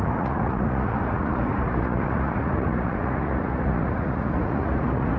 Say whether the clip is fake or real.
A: fake